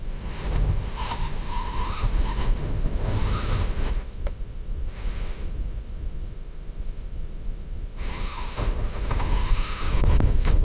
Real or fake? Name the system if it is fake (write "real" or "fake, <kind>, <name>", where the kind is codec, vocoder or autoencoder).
fake, autoencoder, DAC-VAE